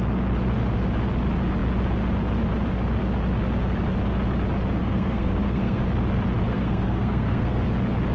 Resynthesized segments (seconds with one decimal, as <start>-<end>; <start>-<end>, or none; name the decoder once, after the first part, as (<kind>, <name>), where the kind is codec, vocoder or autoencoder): 4.8-5.8 (codec, SNAC); 6.5-7.6